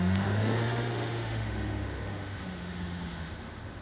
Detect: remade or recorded remade